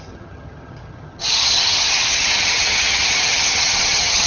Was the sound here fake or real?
fake